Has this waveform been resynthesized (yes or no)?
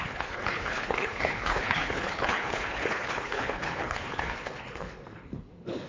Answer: yes